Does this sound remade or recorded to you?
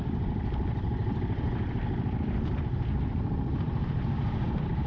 remade